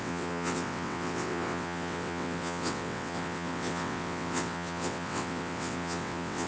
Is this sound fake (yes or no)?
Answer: yes